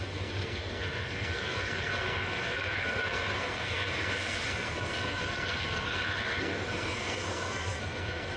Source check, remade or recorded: remade